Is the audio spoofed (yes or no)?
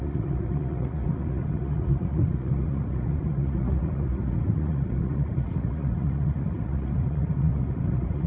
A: yes